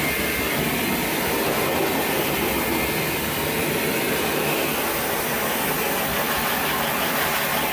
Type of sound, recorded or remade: recorded